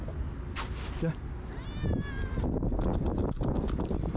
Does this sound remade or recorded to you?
recorded